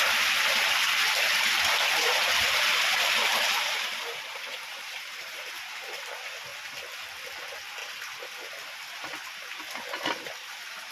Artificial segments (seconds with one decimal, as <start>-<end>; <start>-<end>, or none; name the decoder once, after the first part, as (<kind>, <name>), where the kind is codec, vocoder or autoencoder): 2.2-5.8 (vocoder, BigVGAN v2)